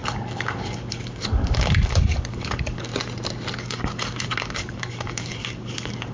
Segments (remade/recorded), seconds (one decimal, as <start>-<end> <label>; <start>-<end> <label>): 0.0-2.9 remade; 2.9-3.6 recorded; 3.6-6.1 remade

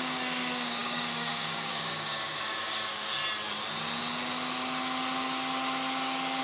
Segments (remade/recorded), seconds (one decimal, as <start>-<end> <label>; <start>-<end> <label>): 0.0-3.2 remade; 3.2-6.4 recorded

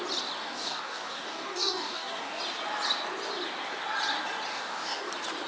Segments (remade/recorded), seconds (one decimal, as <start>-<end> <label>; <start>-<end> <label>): 0.0-0.4 recorded; 0.4-2.4 remade; 2.4-4.5 recorded; 4.5-5.1 remade; 5.1-5.5 recorded

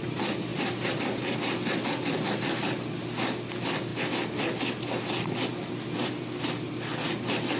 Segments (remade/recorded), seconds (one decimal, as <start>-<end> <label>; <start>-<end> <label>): 0.0-7.6 recorded

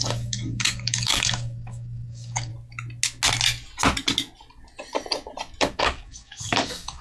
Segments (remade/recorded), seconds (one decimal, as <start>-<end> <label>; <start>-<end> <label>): 0.0-2.5 remade; 2.5-5.6 recorded; 5.6-7.0 remade

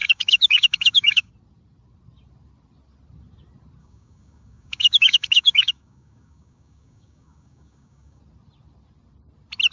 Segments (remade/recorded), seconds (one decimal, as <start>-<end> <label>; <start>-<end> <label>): 0.0-1.3 remade; 1.3-3.8 recorded; 3.8-8.2 remade; 8.2-9.7 recorded

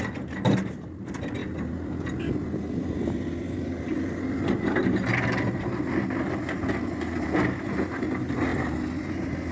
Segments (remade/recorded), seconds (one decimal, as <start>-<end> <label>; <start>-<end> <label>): 0.0-9.5 recorded

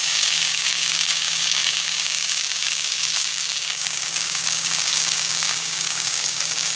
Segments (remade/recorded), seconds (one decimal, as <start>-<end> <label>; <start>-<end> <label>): 0.0-6.8 remade